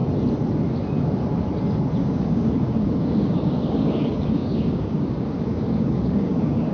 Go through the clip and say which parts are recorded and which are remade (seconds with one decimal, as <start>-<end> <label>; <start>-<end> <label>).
0.0-2.0 recorded; 2.0-6.7 remade